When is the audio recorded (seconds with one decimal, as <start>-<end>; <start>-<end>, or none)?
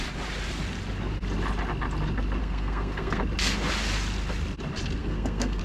0.0-2.4; 3.2-5.0